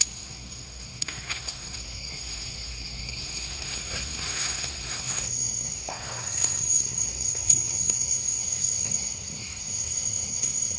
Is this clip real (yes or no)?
no